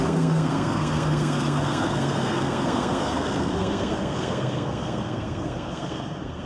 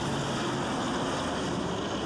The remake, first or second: first